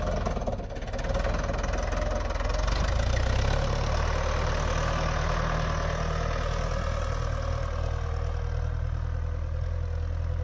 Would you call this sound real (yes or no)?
yes